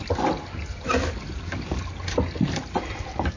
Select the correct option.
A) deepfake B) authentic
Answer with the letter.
B